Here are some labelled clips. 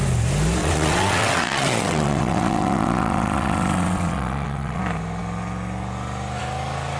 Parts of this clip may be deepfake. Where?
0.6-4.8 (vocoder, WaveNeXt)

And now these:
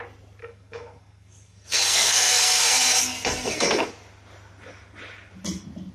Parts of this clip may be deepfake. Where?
0.4-3.9 (codec, SNAC)

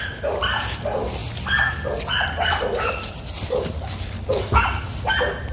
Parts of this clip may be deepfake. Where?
none

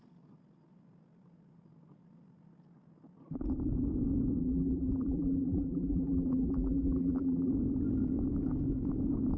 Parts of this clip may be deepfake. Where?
4.4-7.5 (vocoder, BigVGAN v2)

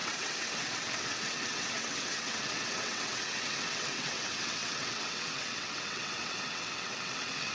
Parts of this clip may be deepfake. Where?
0.0-7.5 (vocoder, WaveNeXt)

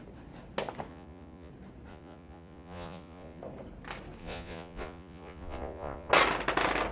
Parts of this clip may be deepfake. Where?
0.9-1.5 (vocoder, Vocos); 1.9-3.4; 4.2-6.1

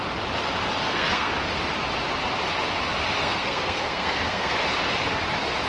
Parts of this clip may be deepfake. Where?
0.8-1.3 (codec, SNAC); 3.2-4.5